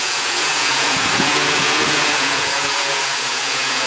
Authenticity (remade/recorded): remade